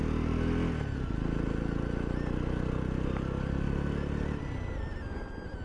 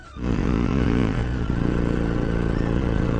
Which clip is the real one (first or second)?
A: first